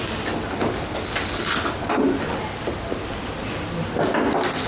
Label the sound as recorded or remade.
recorded